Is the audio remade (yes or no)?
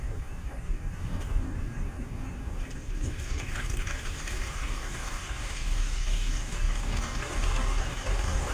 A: yes